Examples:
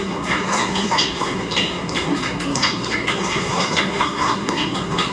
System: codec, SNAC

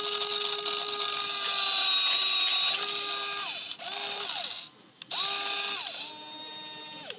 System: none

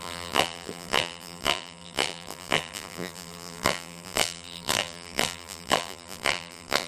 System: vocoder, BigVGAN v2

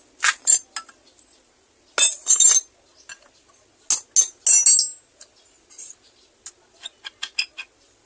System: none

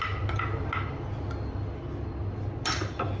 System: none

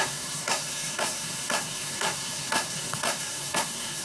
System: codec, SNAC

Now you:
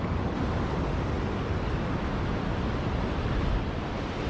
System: none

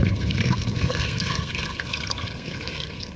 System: codec, SNAC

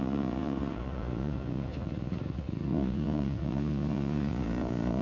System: vocoder, Vocos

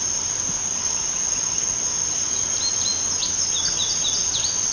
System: none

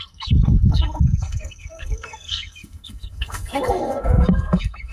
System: codec, SNAC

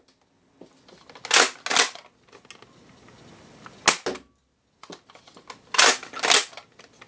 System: none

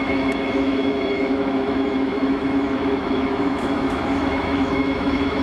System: autoencoder, DAC-VAE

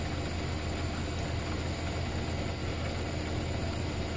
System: none